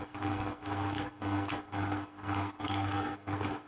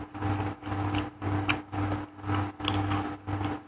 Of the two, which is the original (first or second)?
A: second